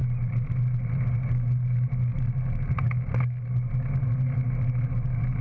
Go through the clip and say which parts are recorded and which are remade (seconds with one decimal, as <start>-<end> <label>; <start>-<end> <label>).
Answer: 0.0-5.4 recorded